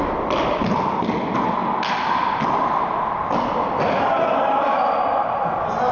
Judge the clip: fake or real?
real